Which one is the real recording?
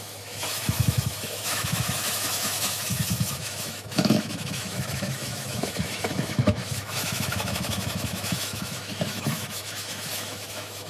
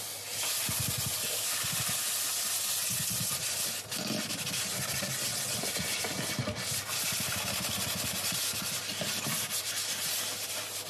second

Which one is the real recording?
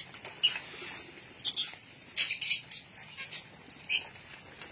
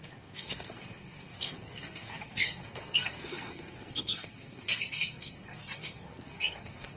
first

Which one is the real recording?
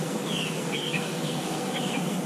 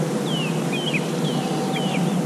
second